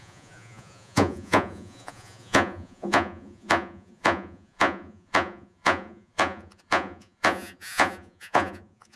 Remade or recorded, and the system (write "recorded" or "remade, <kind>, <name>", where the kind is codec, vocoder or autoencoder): remade, vocoder, Vocos